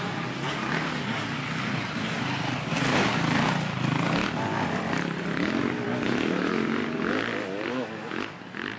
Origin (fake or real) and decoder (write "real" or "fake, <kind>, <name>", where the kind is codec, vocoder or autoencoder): real